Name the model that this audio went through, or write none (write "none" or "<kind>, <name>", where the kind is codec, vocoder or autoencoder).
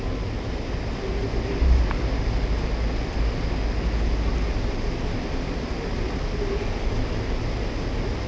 none